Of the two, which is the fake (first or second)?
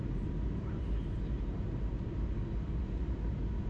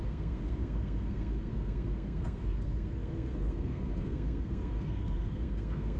second